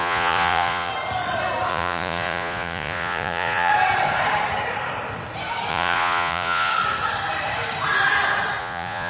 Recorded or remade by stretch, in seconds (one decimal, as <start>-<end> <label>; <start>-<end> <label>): 0.0-0.9 remade; 0.9-1.7 recorded; 1.7-3.7 remade; 3.7-5.7 recorded; 5.7-6.7 remade; 6.7-8.6 recorded; 8.6-9.1 remade